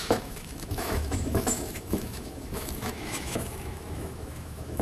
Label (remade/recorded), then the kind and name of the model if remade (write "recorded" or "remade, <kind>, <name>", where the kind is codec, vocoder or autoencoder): remade, autoencoder, DAC-VAE